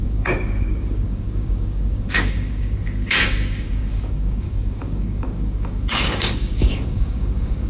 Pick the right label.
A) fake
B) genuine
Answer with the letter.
A